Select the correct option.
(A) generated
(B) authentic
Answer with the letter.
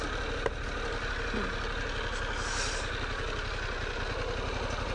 B